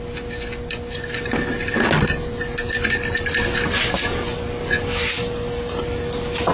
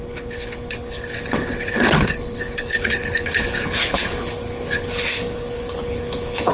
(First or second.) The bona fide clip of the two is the first